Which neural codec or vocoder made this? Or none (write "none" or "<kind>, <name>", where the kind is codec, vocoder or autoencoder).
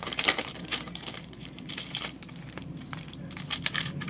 vocoder, BigVGAN v2